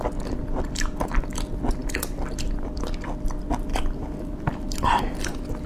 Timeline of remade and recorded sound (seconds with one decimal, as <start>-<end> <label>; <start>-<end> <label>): 0.0-1.8 recorded; 1.8-2.7 remade; 2.7-3.7 recorded; 3.7-5.0 remade; 5.0-5.7 recorded